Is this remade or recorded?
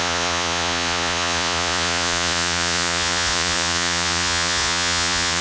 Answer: remade